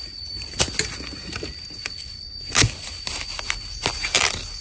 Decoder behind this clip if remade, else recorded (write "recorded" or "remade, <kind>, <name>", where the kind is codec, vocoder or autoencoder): recorded